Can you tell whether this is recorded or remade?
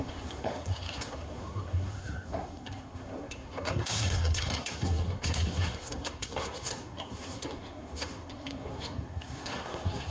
remade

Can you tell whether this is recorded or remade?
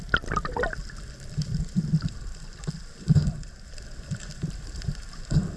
recorded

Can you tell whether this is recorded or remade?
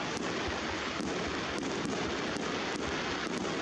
recorded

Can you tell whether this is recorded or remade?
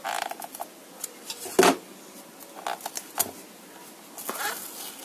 recorded